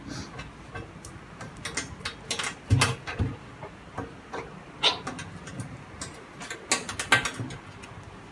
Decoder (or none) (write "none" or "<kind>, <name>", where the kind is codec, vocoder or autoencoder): none